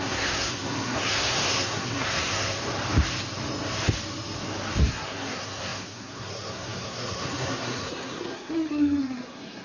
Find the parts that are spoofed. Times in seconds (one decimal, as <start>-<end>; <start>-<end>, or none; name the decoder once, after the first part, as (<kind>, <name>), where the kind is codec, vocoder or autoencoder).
0.0-2.6 (codec, SNAC); 4.8-9.6